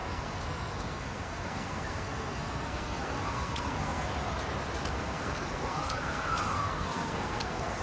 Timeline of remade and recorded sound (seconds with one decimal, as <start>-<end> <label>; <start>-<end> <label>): 0.0-4.1 remade; 4.1-4.9 recorded; 4.9-7.8 remade